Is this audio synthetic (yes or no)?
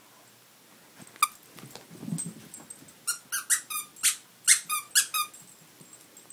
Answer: no